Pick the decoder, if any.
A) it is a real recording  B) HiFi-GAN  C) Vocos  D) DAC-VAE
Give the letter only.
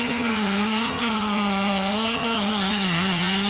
B